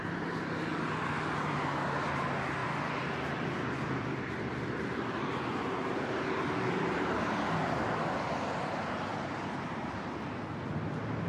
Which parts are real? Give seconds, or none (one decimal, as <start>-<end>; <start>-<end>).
0.0-2.6; 5.2-9.1; 10.0-11.3